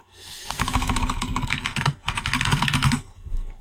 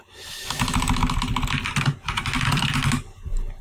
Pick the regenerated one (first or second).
first